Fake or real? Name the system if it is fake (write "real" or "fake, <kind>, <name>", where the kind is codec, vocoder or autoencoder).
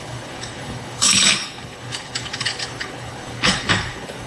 fake, codec, HILCodec